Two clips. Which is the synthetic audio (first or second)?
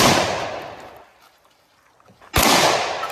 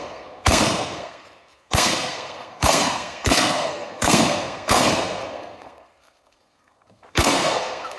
second